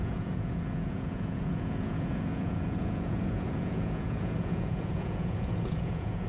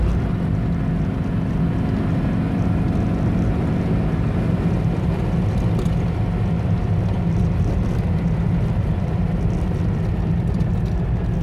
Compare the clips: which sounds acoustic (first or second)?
second